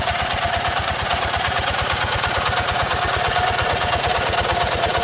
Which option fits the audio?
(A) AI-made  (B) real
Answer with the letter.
A